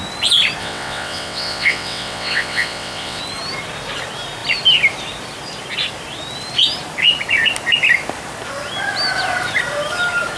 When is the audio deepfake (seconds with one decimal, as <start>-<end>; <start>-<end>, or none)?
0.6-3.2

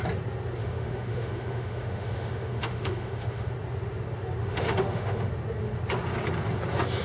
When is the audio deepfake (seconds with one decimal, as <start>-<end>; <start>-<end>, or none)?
0.6-3.5; 4.4-5.3

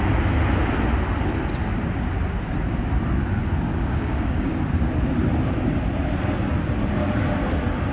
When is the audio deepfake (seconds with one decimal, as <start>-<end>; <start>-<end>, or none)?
3.7-4.6